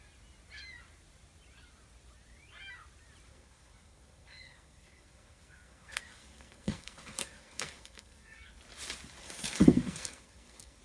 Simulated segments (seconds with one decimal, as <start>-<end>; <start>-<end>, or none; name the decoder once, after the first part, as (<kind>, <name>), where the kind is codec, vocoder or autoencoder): 3.3-8.5 (codec, SNAC); 9.2-10.8